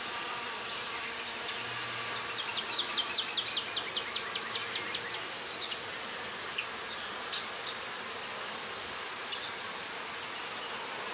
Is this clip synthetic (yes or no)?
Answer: no